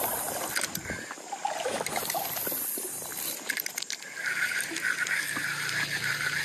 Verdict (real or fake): real